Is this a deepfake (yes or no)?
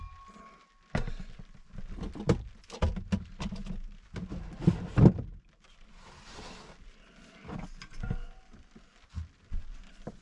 no